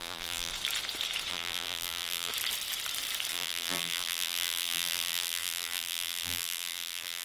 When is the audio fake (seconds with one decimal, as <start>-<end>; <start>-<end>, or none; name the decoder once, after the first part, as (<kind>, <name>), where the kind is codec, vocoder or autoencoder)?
0.0-0.5 (vocoder, BigVGAN v2); 1.3-2.3; 3.3-7.2